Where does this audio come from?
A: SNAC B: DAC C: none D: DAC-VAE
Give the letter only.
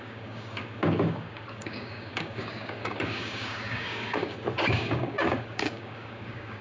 B